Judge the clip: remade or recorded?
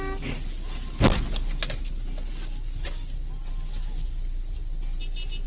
recorded